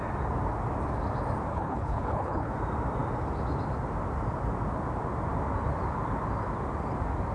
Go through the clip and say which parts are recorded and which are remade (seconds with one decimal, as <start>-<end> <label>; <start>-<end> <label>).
0.0-1.5 recorded; 1.5-2.5 remade; 2.5-7.3 recorded